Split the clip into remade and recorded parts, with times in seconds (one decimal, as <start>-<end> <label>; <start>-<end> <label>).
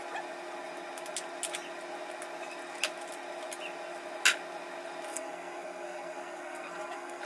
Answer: 0.0-5.1 recorded; 5.1-7.2 remade